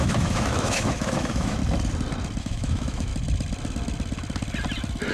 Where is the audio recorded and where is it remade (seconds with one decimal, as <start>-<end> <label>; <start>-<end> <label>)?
0.0-1.6 remade; 1.6-2.4 recorded; 2.4-3.1 remade; 3.1-5.1 recorded